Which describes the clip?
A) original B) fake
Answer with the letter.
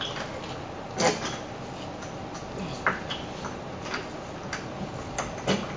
A